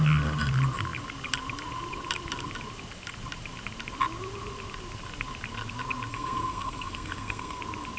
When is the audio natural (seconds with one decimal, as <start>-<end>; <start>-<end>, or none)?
0.0-6.1; 7.6-8.0